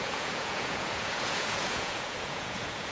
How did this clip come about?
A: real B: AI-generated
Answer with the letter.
B